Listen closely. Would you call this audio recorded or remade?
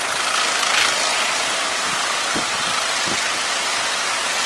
recorded